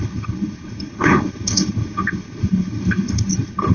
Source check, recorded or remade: remade